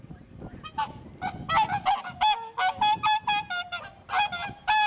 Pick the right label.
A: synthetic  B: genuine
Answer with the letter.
B